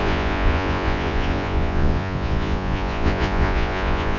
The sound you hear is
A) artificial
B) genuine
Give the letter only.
A